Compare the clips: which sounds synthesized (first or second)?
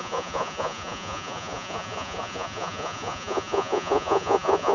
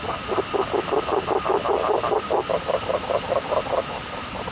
first